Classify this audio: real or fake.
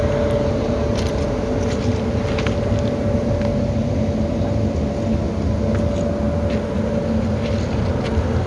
real